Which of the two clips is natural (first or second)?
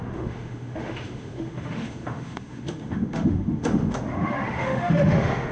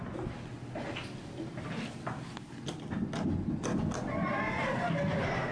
second